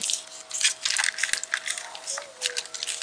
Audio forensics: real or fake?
real